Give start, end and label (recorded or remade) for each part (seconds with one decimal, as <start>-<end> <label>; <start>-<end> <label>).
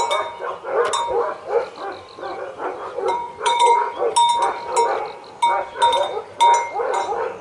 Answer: 0.0-2.3 recorded; 2.3-4.0 remade; 4.0-7.4 recorded